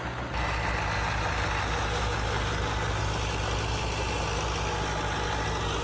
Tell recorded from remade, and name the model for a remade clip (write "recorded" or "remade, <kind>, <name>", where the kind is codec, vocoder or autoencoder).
recorded